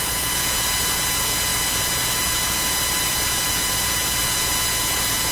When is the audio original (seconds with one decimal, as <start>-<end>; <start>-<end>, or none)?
none